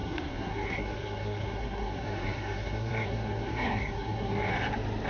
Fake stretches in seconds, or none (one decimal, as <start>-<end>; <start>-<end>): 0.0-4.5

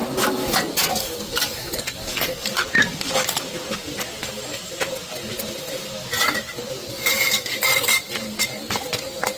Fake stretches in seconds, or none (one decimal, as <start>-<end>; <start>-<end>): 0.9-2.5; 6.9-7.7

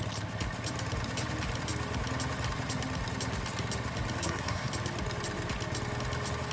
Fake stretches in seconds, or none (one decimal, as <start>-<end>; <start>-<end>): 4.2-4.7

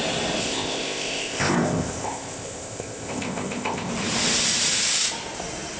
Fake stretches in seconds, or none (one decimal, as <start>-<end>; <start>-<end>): 0.4-3.9

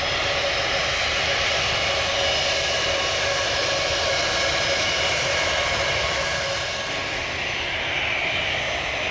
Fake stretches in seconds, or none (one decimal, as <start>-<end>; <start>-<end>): none

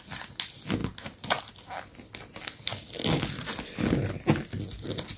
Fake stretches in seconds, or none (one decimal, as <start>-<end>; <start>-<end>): none

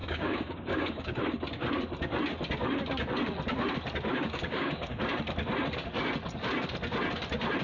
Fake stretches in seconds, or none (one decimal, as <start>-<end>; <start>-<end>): 0.0-1.2; 4.1-5.0

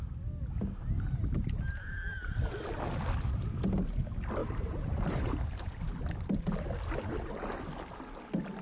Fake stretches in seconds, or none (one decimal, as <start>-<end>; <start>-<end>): 4.4-5.3